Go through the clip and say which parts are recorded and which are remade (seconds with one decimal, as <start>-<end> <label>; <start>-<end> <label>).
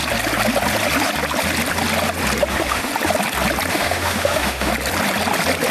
0.0-2.5 recorded; 2.5-2.9 remade; 2.9-3.7 recorded; 3.7-4.7 remade; 4.7-5.7 recorded